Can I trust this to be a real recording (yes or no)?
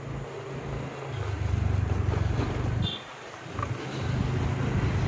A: yes